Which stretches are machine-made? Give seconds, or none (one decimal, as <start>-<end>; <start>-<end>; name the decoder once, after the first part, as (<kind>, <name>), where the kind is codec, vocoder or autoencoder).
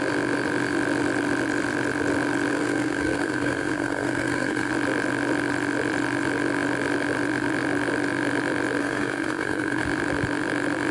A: 2.5-4.7 (codec, SNAC); 8.8-9.8